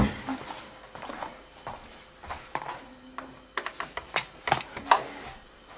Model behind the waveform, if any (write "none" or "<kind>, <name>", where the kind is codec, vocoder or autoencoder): none